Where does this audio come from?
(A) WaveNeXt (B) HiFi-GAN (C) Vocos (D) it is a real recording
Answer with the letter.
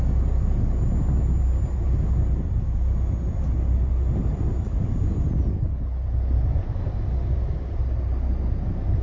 D